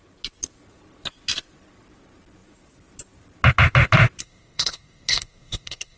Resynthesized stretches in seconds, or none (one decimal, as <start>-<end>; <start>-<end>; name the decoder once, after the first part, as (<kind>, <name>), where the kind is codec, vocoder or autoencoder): 4.2-6.0 (codec, SNAC)